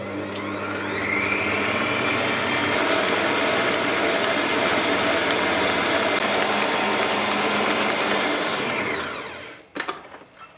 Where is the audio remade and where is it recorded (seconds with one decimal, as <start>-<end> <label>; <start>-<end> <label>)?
0.0-10.6 recorded